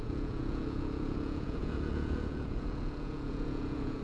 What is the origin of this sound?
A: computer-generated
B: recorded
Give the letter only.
A